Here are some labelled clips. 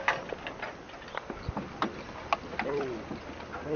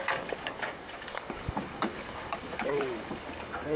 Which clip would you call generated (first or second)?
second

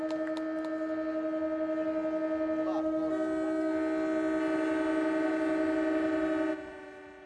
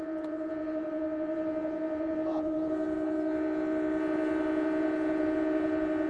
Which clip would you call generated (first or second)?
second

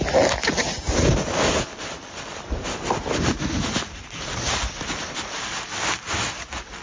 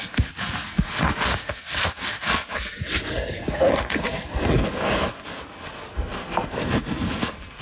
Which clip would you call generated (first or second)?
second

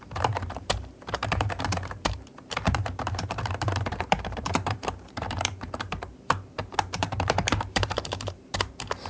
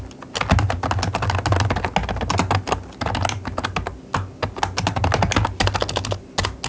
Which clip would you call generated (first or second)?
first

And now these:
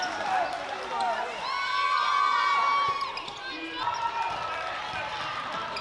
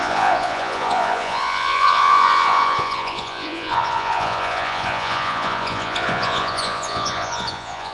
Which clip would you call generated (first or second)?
second